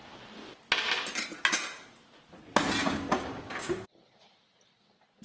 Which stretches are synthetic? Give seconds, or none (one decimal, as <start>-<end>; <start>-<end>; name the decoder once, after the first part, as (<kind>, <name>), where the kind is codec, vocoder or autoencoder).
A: 2.8-3.9 (codec, DAC)